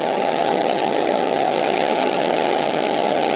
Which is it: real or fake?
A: fake